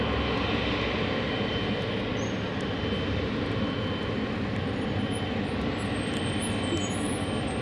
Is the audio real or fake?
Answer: real